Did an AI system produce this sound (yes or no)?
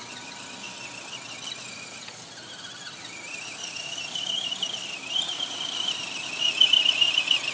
no